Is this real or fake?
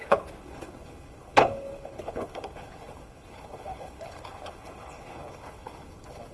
fake